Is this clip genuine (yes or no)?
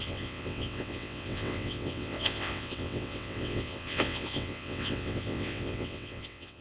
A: no